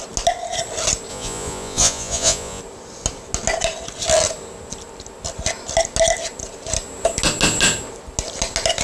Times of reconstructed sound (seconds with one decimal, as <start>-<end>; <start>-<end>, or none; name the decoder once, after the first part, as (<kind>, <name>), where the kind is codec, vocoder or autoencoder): 1.1-2.6 (vocoder, Vocos)